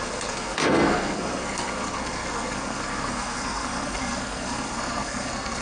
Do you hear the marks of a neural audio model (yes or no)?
yes